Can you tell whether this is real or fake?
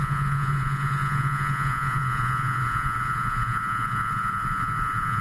fake